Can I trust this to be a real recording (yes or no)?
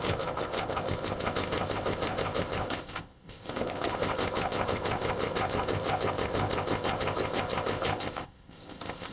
no